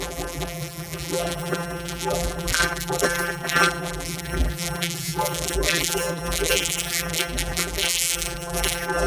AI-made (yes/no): yes